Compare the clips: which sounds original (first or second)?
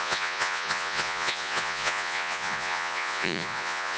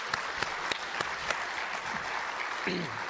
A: second